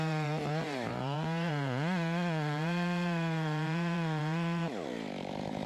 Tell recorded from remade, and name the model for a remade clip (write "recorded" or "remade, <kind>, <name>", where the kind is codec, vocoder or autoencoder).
remade, vocoder, BigVGAN v2